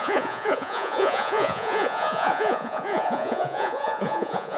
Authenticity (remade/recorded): remade